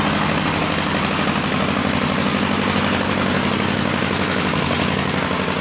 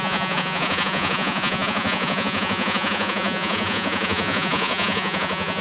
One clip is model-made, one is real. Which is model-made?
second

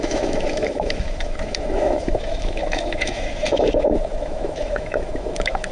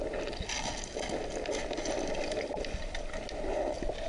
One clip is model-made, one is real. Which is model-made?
first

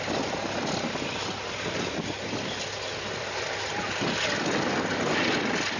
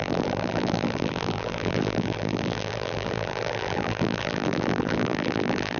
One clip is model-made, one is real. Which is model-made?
second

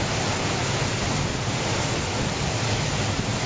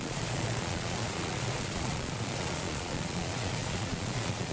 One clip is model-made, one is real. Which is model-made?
second